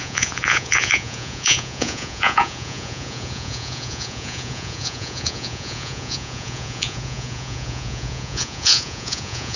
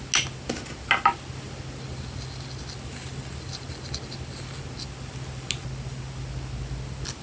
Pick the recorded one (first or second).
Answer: second